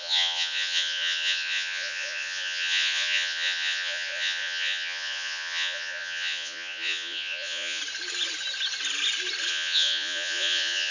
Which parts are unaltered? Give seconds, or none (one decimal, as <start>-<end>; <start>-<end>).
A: 7.8-9.5